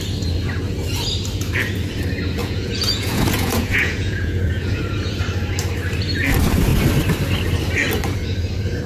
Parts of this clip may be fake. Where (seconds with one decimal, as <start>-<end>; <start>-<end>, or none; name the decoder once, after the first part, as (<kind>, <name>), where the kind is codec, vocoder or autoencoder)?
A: 2.4-4.8 (vocoder, Vocos)